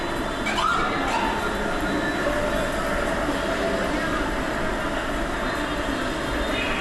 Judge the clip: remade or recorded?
recorded